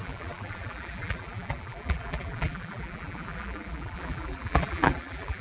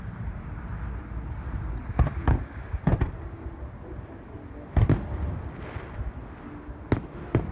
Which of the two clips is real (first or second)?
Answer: second